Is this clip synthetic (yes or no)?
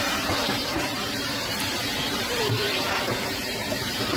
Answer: yes